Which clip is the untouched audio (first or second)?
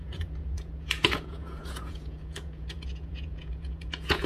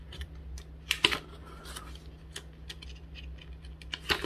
second